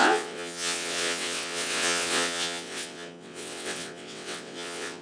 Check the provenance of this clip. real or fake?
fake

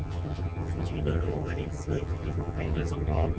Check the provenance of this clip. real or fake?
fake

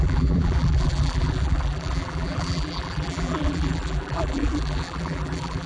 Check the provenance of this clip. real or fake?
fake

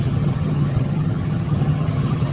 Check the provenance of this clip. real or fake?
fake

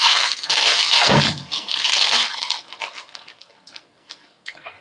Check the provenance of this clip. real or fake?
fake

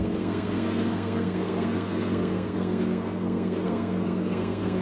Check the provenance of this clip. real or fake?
fake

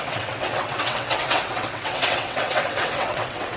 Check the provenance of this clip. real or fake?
fake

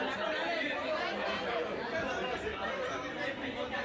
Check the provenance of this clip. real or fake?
real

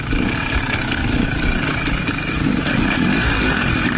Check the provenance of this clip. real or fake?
fake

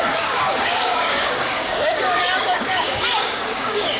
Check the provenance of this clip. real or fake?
fake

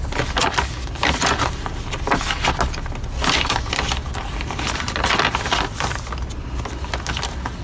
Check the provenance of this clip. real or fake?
real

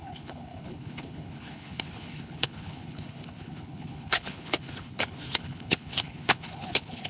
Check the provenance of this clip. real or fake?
fake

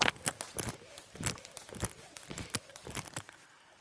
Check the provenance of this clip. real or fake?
real